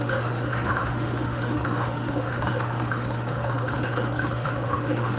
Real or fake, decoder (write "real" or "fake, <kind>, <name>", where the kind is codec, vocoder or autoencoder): fake, autoencoder, DAC-VAE